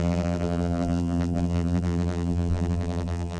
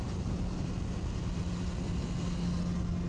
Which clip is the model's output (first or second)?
first